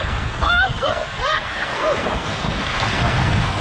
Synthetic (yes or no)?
yes